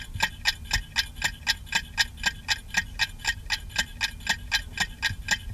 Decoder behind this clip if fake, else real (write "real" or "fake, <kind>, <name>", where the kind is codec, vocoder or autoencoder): real